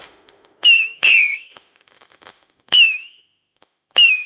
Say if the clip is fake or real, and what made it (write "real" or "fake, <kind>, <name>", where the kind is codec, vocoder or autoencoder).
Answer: fake, autoencoder, DAC-VAE